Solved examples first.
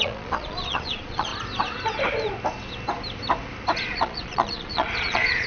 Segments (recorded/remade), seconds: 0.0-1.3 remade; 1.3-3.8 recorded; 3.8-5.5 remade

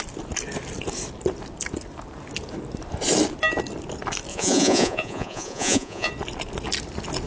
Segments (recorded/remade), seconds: 0.0-4.3 recorded; 4.3-6.1 remade; 6.1-7.3 recorded

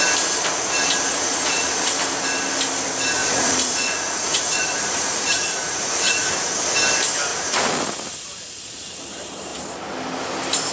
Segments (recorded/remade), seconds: 0.0-1.1 recorded; 1.1-1.9 remade; 1.9-3.2 recorded; 3.2-6.5 remade; 6.5-7.3 recorded; 7.3-9.0 remade; 9.0-10.7 recorded